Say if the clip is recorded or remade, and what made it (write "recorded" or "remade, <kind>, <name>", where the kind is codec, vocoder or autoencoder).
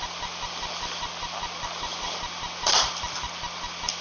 recorded